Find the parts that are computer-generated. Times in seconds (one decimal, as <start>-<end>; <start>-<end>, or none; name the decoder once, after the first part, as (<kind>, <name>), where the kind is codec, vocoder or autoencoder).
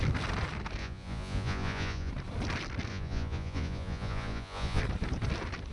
0.8-2.1 (vocoder, Vocos); 2.9-4.8